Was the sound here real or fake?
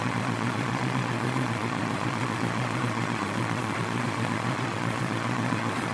fake